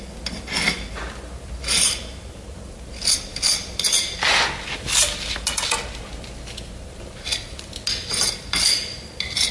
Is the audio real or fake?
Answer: real